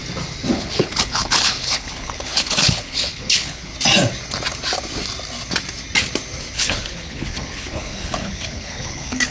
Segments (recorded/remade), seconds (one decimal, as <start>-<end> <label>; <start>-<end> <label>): 0.0-0.5 recorded; 0.5-3.7 remade; 3.7-6.5 recorded; 6.5-9.3 remade